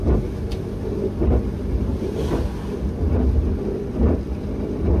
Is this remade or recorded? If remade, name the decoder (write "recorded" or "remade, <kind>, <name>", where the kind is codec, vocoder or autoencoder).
recorded